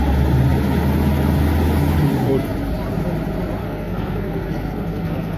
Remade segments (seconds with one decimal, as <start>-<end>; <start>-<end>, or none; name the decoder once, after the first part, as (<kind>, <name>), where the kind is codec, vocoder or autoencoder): 3.6-5.4 (codec, SNAC)